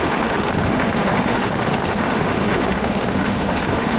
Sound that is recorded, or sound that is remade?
remade